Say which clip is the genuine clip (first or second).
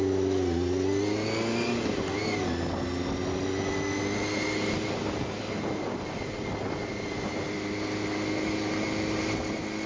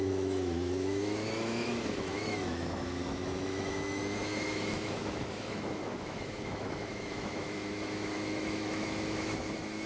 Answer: first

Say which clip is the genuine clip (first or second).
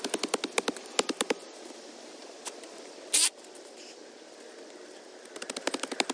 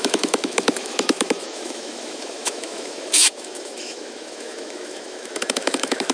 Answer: first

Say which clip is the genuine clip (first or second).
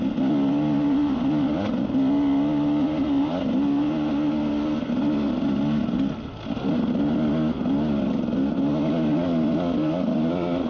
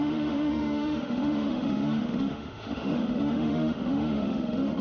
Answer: first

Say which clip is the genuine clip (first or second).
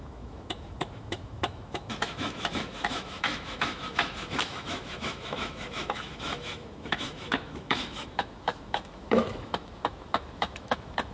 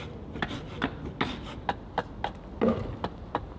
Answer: second